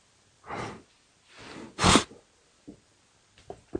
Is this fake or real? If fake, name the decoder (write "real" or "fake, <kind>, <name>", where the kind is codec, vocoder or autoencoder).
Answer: real